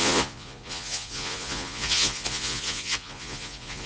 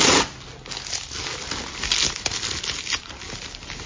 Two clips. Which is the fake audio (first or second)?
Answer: first